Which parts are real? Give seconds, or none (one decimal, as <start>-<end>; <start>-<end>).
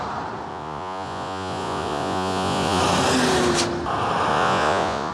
0.0-0.5; 2.8-4.3